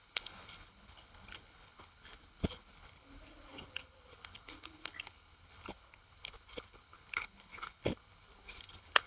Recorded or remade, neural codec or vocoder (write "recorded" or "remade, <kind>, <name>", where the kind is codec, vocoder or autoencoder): remade, codec, HILCodec